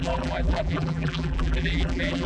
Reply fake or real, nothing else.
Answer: fake